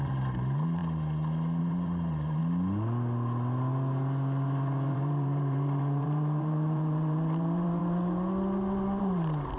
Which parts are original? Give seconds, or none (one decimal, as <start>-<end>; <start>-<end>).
0.8-1.6; 2.4-4.9; 7.8-9.0